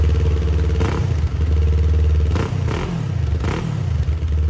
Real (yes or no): yes